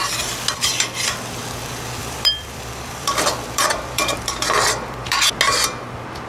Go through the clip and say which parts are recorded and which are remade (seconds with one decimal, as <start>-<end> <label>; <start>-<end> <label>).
0.0-2.0 recorded; 2.0-5.4 remade; 5.4-6.3 recorded